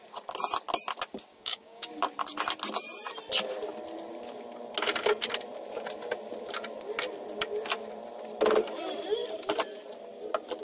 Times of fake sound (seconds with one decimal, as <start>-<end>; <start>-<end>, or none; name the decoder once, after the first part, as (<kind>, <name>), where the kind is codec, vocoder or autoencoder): 1.3-1.9 (codec, DAC)